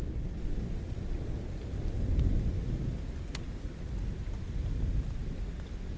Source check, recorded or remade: recorded